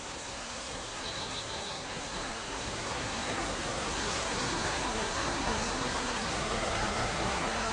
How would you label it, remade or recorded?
remade